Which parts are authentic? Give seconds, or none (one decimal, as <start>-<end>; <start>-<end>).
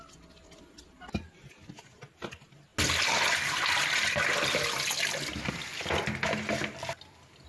0.0-7.5